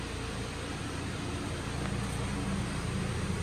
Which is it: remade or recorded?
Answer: recorded